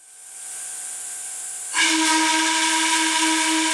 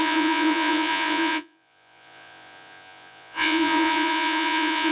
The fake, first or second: second